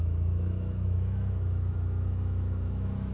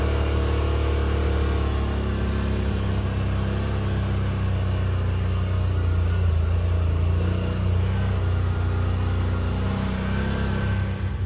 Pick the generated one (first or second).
first